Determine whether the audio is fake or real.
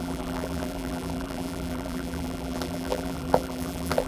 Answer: fake